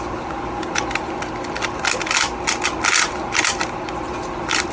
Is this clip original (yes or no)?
yes